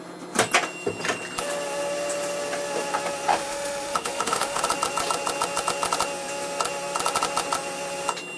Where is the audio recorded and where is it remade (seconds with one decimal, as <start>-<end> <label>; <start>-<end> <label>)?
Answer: 0.0-3.3 recorded; 3.3-4.6 remade; 4.6-8.4 recorded